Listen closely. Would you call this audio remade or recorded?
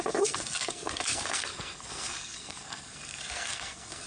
remade